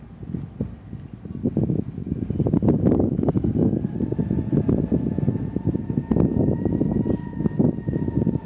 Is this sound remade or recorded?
recorded